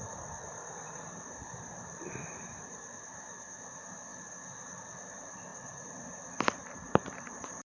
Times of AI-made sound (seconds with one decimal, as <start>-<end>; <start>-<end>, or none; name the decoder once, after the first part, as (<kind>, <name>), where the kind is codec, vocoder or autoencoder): 0.0-4.1 (vocoder, BigVGAN v2); 5.1-5.5; 6.2-7.6